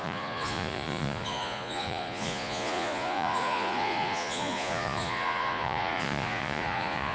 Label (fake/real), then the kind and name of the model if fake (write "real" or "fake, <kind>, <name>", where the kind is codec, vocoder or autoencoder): fake, vocoder, Vocos